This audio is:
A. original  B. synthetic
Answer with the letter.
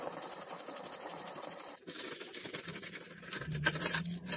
B